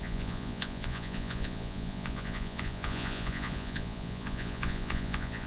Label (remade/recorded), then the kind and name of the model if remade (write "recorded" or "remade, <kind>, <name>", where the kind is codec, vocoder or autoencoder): remade, vocoder, Vocos